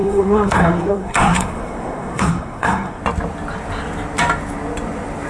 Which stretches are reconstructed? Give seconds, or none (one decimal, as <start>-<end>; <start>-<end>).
0.0-3.0